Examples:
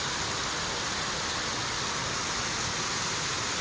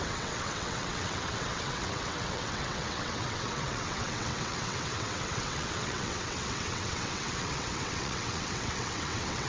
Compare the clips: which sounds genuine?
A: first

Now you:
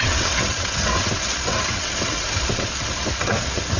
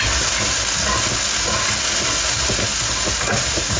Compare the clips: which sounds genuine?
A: second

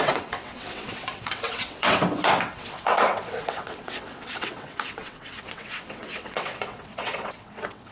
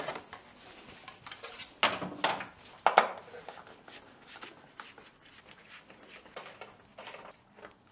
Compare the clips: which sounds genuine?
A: second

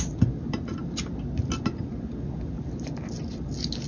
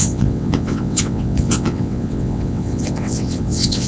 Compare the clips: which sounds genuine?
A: first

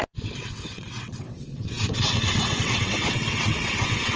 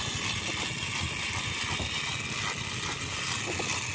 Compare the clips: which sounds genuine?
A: second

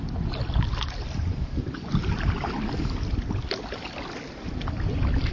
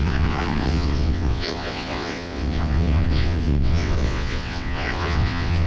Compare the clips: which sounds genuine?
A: first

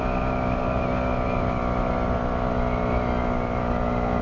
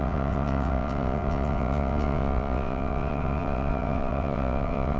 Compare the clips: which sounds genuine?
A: first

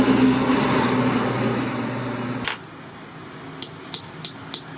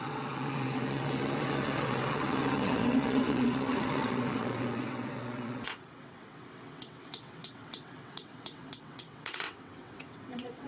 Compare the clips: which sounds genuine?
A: first